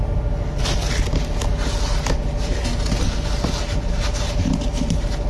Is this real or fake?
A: real